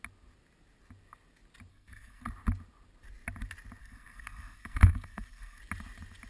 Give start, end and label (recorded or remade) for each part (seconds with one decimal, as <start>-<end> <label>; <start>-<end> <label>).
0.0-1.7 recorded; 1.7-2.3 remade; 2.3-3.8 recorded; 3.8-5.6 remade; 5.6-6.3 recorded

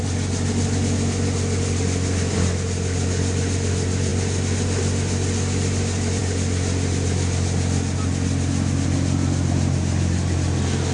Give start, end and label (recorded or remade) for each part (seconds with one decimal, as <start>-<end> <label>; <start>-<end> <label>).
0.0-10.9 recorded

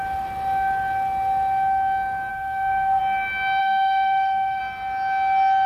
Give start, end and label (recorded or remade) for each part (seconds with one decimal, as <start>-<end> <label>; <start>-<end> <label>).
0.0-2.3 recorded; 2.3-3.0 remade; 3.0-3.6 recorded; 3.6-4.6 remade; 4.6-5.7 recorded

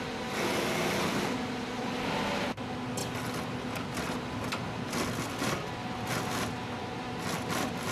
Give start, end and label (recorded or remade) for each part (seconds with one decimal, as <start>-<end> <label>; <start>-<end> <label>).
0.0-7.9 recorded

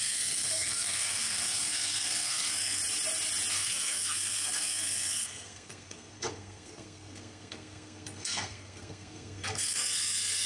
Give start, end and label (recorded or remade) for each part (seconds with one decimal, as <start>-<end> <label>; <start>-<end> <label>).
0.0-2.8 remade; 2.8-3.5 recorded; 3.5-10.5 remade

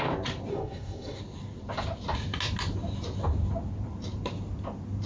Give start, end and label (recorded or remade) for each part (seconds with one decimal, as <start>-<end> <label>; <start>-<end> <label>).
0.0-0.5 recorded; 0.5-1.2 remade; 1.2-5.1 recorded

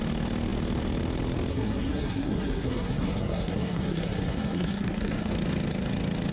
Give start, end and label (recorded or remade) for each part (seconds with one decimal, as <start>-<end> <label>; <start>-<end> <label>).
0.0-1.5 recorded; 1.5-5.3 remade; 5.3-6.3 recorded